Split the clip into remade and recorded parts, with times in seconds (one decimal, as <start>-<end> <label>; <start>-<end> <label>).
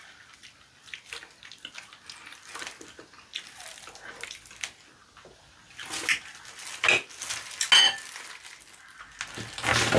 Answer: 0.0-10.0 recorded